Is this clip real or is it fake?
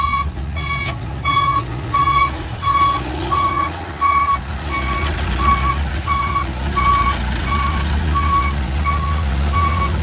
fake